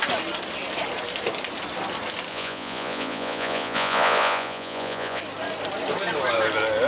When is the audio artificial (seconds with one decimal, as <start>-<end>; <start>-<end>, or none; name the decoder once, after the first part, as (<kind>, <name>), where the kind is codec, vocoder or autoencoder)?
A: 2.3-5.2 (vocoder, Vocos)